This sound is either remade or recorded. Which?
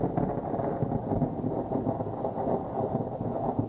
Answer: recorded